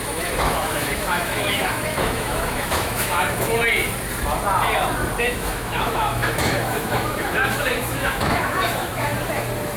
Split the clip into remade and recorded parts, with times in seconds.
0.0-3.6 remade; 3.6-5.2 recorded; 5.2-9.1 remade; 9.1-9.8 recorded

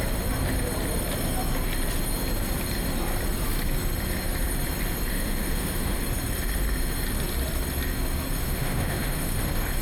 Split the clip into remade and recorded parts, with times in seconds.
0.0-5.1 recorded; 5.1-6.0 remade; 6.0-8.4 recorded; 8.4-9.4 remade; 9.4-9.8 recorded